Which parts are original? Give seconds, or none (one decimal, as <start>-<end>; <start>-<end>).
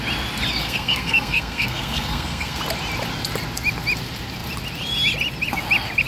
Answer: 0.0-0.6; 2.6-6.1